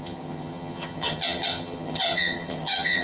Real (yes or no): no